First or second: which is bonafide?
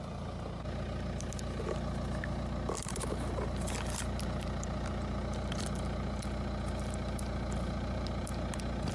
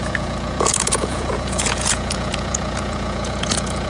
first